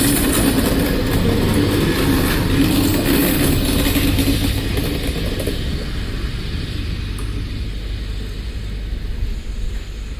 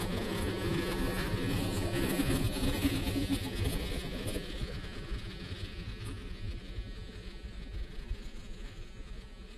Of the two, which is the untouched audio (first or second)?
first